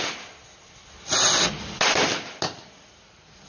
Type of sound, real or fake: real